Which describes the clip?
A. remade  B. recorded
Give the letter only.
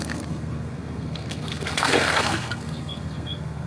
A